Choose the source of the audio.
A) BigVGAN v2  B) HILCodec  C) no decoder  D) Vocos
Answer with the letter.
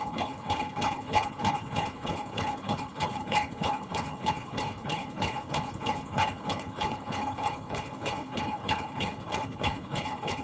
B